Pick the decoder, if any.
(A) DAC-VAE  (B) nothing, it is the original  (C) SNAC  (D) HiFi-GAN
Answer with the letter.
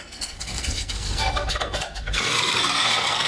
C